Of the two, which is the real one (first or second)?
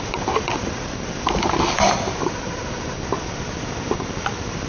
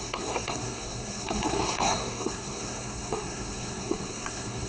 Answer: first